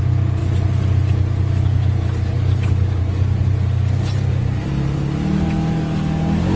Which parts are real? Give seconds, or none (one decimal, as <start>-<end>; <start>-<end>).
0.0-6.6

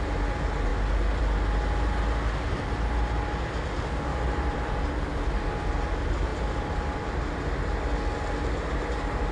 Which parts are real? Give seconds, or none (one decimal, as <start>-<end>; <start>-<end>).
0.0-4.1; 4.9-6.3; 7.9-9.3

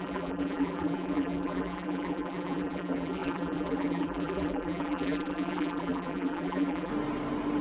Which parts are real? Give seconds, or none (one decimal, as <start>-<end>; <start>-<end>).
6.9-7.6

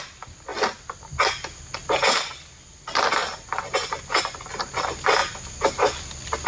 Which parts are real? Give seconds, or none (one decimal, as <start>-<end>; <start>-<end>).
0.0-6.5